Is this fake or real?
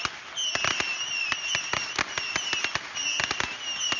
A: real